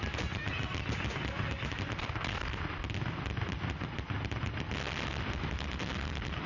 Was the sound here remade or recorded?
recorded